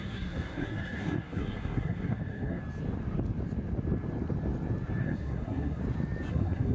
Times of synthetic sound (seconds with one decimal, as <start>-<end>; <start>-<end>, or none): 0.0-2.6; 5.0-5.8; 6.3-6.7